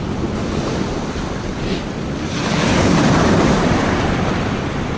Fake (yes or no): no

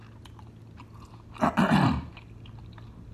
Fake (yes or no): no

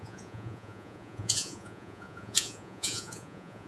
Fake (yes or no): yes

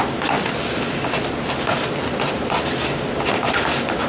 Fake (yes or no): no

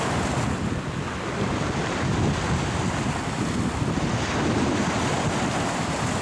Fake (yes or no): no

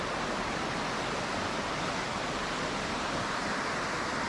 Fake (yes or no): no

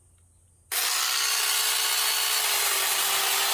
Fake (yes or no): no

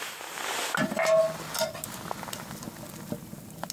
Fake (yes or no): no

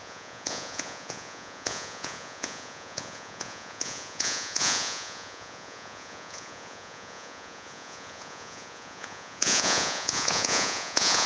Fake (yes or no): yes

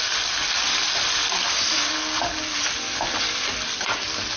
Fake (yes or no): no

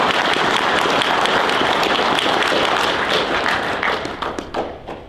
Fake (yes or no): no